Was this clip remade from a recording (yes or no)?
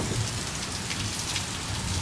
yes